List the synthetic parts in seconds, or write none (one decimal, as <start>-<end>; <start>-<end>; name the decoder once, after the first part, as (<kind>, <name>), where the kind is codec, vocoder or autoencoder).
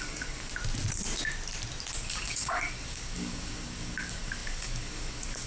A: 0.0-0.5 (codec, DAC); 2.0-5.5